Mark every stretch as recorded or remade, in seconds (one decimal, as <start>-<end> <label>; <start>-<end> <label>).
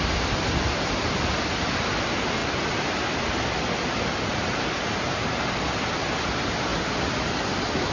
0.0-7.9 recorded